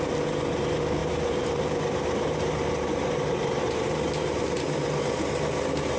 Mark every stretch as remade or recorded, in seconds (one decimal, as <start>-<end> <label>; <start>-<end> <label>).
0.0-1.0 recorded; 1.0-4.6 remade; 4.6-6.0 recorded